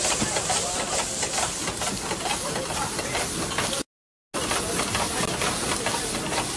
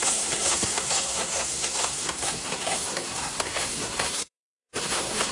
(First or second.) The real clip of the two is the first